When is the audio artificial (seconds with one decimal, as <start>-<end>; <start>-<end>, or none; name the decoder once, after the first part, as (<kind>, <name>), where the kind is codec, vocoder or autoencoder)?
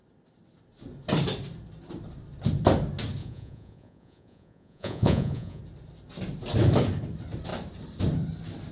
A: 3.2-5.6 (vocoder, Vocos)